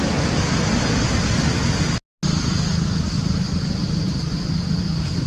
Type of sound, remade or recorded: recorded